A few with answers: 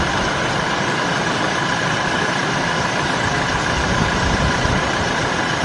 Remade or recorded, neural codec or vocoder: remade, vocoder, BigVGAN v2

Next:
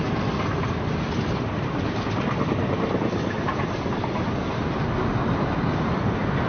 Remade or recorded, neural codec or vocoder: recorded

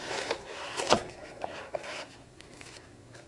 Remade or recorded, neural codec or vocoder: remade, codec, SNAC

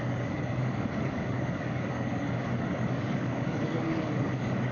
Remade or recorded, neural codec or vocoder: remade, codec, DAC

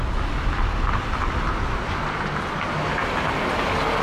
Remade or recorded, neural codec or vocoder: recorded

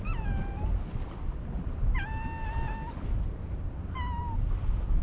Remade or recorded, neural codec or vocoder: recorded